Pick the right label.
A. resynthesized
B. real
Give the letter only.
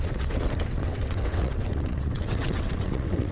A